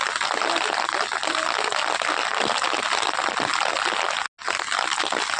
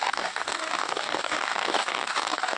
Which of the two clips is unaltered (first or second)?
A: first